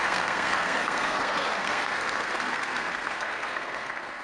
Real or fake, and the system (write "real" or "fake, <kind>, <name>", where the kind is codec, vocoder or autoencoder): fake, codec, SNAC